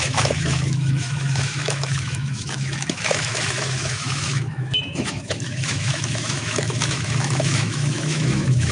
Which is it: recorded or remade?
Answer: remade